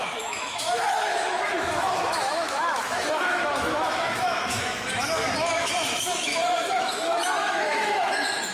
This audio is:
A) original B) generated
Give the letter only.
B